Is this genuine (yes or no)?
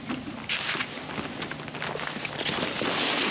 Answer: yes